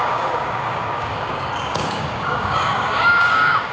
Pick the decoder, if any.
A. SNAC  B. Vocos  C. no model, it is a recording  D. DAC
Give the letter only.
D